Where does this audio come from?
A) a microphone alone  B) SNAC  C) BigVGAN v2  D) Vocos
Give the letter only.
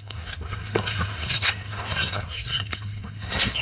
B